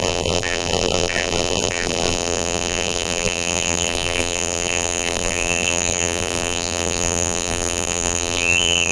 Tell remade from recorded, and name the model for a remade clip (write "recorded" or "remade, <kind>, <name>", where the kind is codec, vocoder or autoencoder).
remade, vocoder, BigVGAN v2